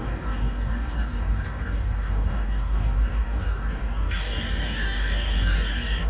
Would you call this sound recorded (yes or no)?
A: no